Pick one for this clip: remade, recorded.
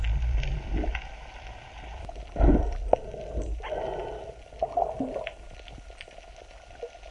recorded